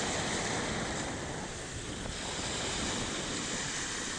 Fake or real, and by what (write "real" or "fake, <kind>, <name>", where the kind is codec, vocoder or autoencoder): real